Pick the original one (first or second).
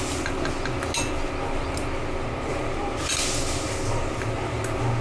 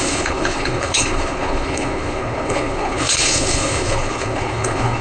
first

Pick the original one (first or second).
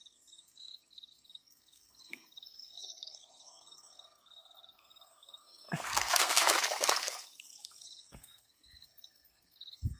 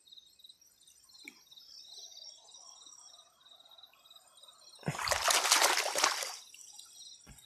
second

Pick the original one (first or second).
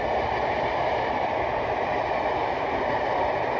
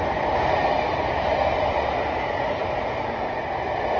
second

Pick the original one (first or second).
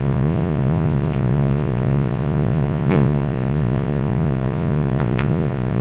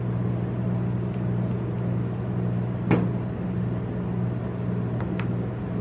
second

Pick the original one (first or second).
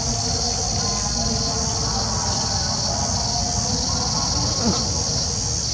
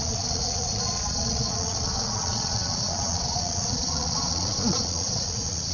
first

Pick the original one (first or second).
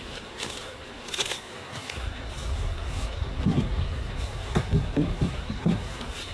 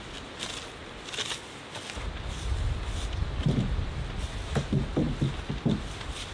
second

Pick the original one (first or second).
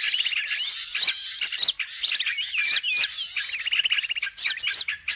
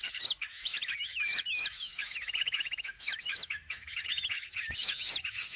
first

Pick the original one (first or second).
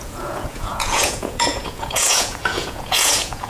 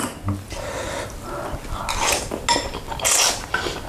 second